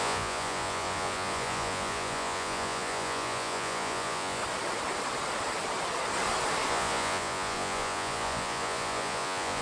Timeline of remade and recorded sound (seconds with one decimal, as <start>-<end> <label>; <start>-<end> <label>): 0.0-4.4 remade; 4.4-6.7 recorded; 6.7-9.6 remade